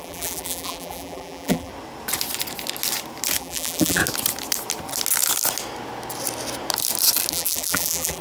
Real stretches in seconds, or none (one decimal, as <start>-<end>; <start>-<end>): 1.7-3.4; 4.0-7.3